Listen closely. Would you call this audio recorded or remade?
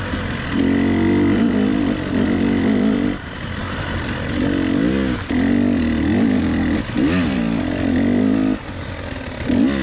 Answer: recorded